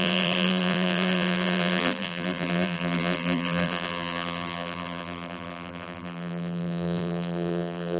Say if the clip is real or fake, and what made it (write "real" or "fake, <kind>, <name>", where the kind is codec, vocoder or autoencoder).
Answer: fake, vocoder, BigVGAN v2